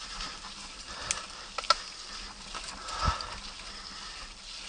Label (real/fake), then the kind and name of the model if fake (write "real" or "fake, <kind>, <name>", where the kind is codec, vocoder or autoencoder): real